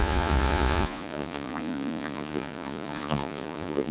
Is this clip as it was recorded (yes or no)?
no